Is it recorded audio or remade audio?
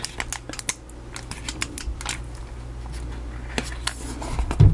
recorded